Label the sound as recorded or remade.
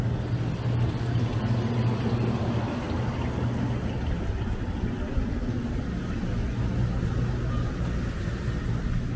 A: recorded